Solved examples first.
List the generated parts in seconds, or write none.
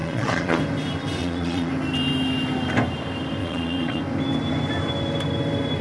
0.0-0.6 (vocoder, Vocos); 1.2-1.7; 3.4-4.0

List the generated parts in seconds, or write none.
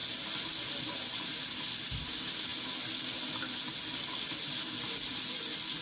none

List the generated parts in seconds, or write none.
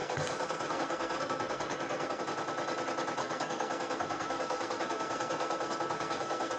0.0-2.2 (codec, SNAC); 3.2-6.6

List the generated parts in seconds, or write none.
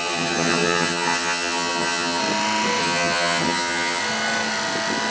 0.0-2.2 (vocoder, HiFi-GAN); 2.8-4.0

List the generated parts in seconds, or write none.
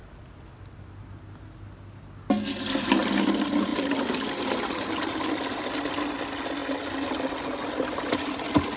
none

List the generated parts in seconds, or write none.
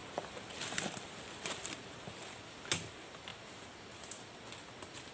0.0-2.7 (vocoder, BigVGAN v2)